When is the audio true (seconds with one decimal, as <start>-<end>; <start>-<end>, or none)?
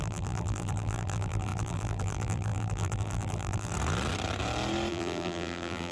3.7-4.9